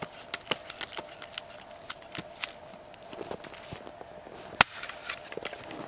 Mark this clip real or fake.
real